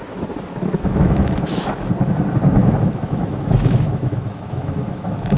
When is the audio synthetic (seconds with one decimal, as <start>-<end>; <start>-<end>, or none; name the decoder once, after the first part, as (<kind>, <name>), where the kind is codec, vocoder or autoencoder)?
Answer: 0.7-1.9 (autoencoder, DAC-VAE); 2.6-5.4